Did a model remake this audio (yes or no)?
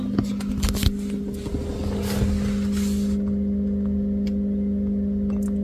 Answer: no